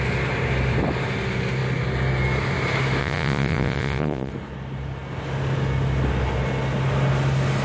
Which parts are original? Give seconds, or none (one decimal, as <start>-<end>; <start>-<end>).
0.0-3.0; 4.3-7.6